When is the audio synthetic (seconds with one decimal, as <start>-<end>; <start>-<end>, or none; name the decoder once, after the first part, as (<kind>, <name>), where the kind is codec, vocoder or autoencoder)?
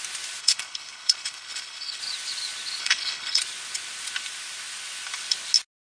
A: 0.4-2.0 (codec, HILCodec); 2.8-3.4